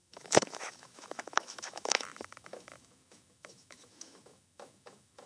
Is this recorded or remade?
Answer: remade